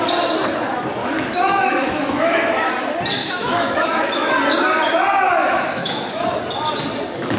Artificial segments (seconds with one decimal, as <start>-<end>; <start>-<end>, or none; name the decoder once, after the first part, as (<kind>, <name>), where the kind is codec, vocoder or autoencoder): 1.0-2.7 (autoencoder, DAC-VAE); 3.2-4.3; 5.4-6.4